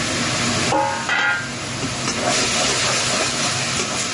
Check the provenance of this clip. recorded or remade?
recorded